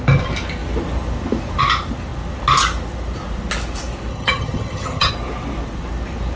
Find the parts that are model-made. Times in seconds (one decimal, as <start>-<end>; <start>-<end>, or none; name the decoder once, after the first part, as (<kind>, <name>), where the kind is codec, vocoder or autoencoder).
4.1-5.1 (vocoder, HiFi-GAN)